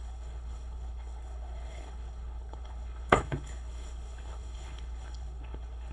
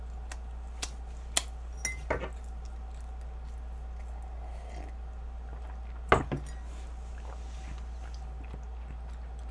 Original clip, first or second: second